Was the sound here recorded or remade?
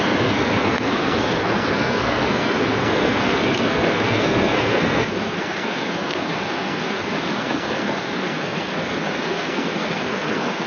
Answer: remade